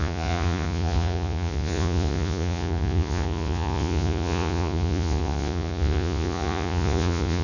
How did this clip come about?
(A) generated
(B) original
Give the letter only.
A